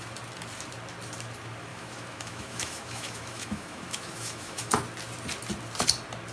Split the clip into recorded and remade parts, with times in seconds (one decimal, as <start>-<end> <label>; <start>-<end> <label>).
0.0-1.7 recorded; 1.7-4.7 remade; 4.7-6.3 recorded